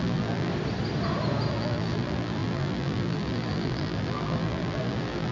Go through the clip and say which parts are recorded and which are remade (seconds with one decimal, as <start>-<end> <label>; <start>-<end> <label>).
0.0-0.5 remade; 0.5-1.5 recorded; 1.5-5.3 remade